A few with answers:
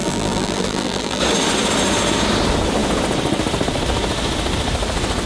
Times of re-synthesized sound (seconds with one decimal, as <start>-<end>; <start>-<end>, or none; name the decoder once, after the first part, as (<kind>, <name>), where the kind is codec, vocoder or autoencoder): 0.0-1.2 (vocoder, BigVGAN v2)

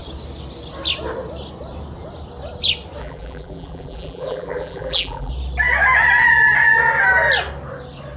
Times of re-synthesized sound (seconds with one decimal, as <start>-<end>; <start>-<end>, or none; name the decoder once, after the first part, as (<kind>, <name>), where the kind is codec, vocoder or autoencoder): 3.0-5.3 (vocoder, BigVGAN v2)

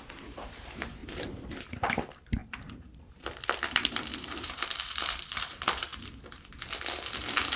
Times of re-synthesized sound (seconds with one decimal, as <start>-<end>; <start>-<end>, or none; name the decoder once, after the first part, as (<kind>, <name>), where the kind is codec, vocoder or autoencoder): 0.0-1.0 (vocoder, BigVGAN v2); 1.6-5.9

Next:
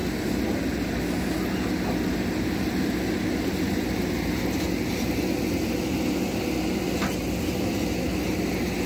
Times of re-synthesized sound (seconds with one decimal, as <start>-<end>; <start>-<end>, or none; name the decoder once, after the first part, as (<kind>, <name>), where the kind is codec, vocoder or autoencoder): 0.0-1.0 (vocoder, BigVGAN v2)

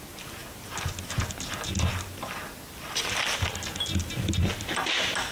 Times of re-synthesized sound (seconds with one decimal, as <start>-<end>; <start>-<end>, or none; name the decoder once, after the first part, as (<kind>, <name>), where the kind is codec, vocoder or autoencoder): none

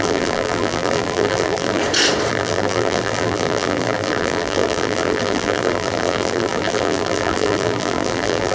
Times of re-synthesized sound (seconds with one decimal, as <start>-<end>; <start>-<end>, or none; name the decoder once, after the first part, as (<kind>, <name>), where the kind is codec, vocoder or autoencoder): 0.0-1.8 (vocoder, BigVGAN v2); 2.3-8.5

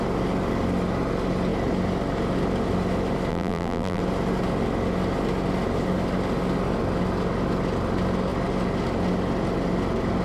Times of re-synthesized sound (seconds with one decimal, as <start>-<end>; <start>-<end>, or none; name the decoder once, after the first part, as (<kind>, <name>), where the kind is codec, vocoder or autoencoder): 3.3-4.0 (vocoder, BigVGAN v2)